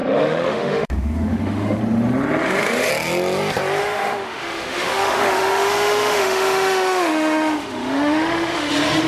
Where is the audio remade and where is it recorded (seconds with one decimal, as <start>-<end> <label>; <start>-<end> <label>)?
0.0-1.8 remade; 1.8-2.4 recorded; 2.4-2.9 remade; 2.9-3.8 recorded; 3.8-8.7 remade; 8.7-9.1 recorded